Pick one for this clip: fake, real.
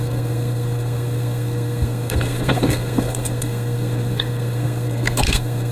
fake